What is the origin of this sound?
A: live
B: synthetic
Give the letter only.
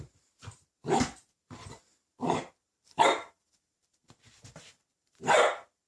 B